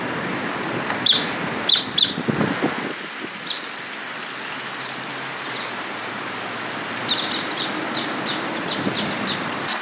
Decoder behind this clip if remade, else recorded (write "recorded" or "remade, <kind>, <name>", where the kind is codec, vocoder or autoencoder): recorded